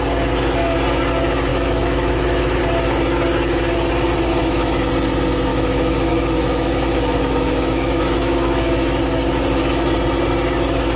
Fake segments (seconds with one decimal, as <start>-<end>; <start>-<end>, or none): 1.5-2.6; 4.4-4.9; 5.5-9.0